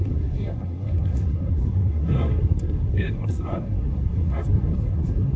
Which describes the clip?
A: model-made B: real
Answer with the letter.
A